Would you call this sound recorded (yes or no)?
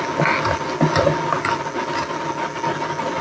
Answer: yes